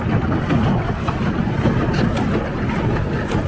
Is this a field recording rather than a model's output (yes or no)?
yes